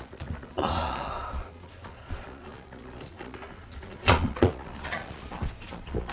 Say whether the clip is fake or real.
fake